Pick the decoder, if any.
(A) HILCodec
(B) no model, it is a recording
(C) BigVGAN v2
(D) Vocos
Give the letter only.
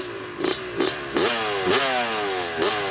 B